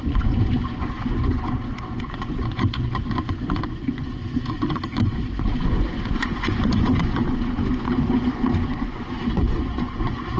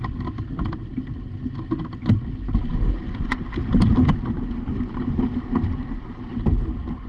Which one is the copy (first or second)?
first